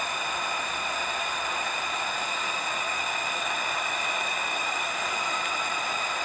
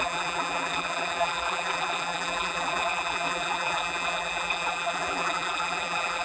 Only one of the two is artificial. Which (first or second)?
second